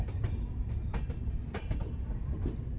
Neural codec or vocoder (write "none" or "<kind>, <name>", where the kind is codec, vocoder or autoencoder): none